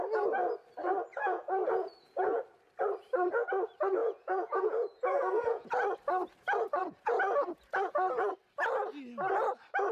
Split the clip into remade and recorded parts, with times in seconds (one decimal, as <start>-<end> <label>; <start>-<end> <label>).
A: 0.0-1.1 recorded; 1.1-2.4 remade; 2.4-4.0 recorded; 4.0-5.7 remade; 5.7-6.8 recorded; 6.8-8.3 remade; 8.3-9.9 recorded